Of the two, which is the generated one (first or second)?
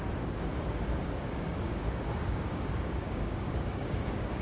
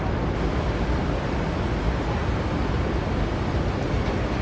first